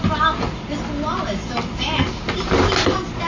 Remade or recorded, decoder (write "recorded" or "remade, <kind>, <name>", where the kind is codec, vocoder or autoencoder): recorded